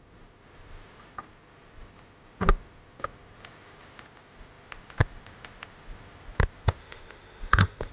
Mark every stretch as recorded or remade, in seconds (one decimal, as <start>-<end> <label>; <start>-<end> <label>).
0.0-6.8 recorded; 6.8-7.9 remade

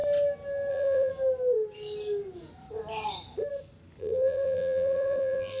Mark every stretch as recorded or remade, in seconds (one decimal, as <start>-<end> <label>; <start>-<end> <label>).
0.0-0.7 recorded; 0.7-1.1 remade; 1.1-4.0 recorded; 4.0-5.6 remade

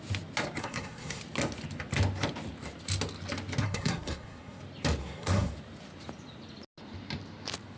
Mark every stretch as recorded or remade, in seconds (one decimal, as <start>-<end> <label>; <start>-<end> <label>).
0.0-0.6 recorded; 0.6-1.2 remade; 1.2-3.6 recorded; 3.6-4.6 remade; 4.6-5.0 recorded; 5.0-5.5 remade; 5.5-7.8 recorded

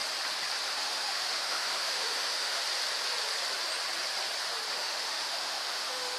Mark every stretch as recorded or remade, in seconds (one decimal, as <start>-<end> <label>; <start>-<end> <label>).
0.0-0.7 recorded; 0.7-2.6 remade; 2.6-4.7 recorded; 4.7-6.2 remade

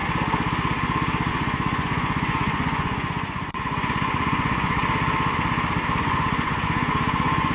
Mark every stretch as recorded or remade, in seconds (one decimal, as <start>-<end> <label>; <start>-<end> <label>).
0.0-1.3 recorded; 1.3-4.8 remade; 4.8-6.0 recorded; 6.0-7.5 remade

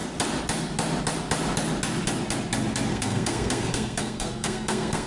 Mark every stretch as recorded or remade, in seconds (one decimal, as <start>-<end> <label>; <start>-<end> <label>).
0.0-2.9 recorded; 2.9-5.1 remade

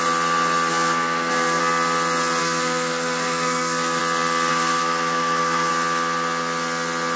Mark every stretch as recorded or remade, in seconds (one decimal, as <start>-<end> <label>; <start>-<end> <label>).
0.0-0.7 recorded; 0.7-1.6 remade; 1.6-2.4 recorded; 2.4-4.0 remade; 4.0-4.5 recorded; 4.5-5.7 remade; 5.7-7.2 recorded

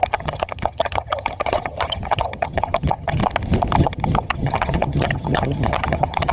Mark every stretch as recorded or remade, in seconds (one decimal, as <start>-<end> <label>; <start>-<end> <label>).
0.0-3.2 remade; 3.2-3.8 recorded; 3.8-6.3 remade